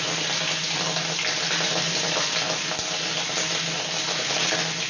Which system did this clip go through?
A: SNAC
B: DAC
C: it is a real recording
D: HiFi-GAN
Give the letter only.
C